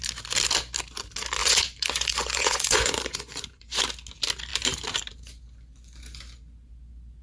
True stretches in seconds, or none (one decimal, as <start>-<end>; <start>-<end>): 0.0-1.4; 3.8-7.2